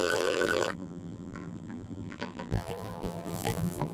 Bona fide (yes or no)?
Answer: no